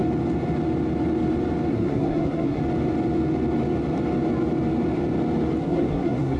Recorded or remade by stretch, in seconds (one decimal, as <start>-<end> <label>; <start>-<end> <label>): 0.0-1.7 recorded; 1.7-2.6 remade; 2.6-5.6 recorded; 5.6-6.4 remade